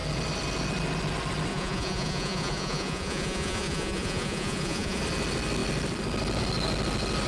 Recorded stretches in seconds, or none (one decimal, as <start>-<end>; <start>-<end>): 0.0-1.5; 5.0-7.3